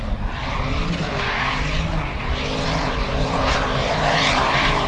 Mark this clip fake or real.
real